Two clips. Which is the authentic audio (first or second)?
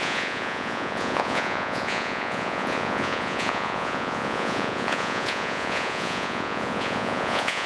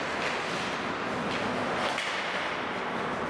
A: second